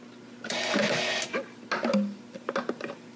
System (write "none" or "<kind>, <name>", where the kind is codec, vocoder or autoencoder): none